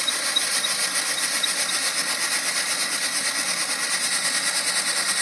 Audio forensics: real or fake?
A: real